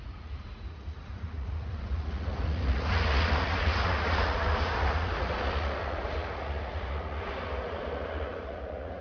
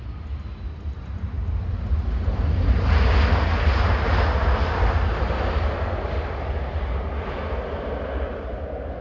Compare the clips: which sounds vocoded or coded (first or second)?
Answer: first